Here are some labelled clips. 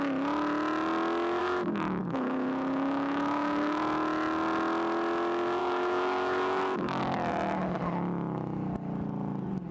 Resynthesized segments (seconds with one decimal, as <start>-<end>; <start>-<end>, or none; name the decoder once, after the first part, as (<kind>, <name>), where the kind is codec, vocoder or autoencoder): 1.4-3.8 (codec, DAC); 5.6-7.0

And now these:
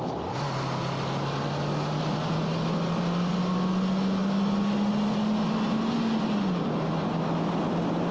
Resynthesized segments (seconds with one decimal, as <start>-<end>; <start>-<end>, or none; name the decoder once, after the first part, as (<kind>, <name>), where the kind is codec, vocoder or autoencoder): none

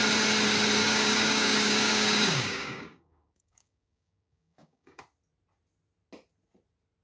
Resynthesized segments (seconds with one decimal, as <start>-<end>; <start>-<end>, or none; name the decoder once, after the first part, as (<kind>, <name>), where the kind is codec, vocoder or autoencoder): 0.8-5.0 (codec, DAC)

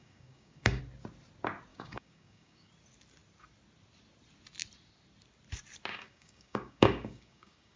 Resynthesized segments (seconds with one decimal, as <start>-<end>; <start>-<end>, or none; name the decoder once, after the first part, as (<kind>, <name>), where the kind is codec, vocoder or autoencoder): 0.0-0.8 (codec, DAC); 1.7-2.7; 5.9-7.8